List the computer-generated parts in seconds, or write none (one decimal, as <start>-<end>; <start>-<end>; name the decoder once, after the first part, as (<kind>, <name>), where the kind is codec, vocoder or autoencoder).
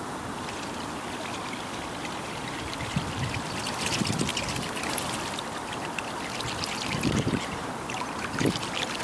none